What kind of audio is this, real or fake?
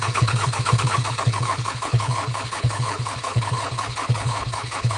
fake